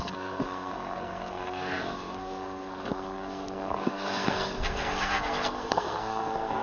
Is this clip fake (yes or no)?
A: yes